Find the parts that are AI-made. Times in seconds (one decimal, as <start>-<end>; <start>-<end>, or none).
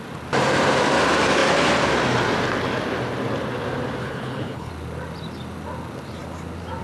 4.0-4.7